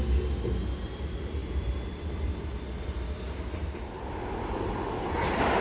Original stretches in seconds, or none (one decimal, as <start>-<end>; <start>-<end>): 0.0-5.6